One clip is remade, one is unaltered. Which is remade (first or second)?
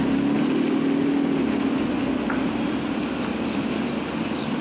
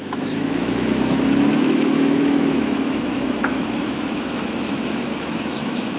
second